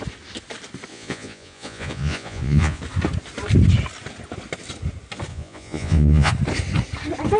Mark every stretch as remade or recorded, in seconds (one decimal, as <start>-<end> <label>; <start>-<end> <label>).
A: 0.0-0.9 recorded; 0.9-2.8 remade; 2.8-5.3 recorded; 5.3-6.3 remade; 6.3-7.4 recorded